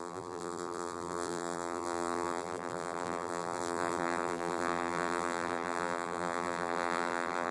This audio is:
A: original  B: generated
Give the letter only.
B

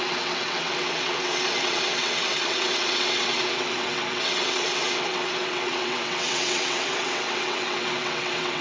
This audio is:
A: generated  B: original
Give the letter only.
A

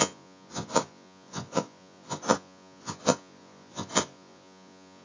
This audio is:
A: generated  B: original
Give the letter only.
A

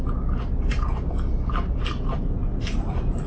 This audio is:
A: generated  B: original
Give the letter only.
B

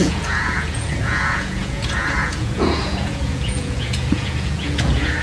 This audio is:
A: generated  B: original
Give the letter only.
A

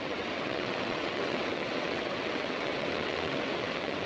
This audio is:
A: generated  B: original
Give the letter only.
A